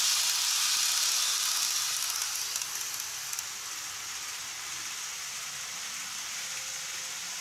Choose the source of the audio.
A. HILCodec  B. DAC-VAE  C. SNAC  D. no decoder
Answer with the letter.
D